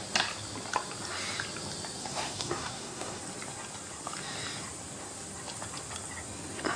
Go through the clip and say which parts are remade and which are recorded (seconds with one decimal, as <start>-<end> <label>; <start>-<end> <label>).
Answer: 0.0-2.0 recorded; 2.0-3.2 remade; 3.2-6.8 recorded